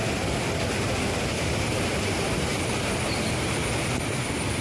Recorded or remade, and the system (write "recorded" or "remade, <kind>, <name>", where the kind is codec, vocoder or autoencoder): recorded